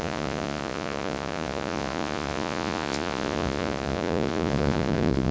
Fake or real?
fake